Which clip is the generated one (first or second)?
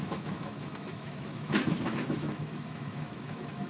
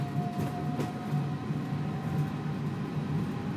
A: first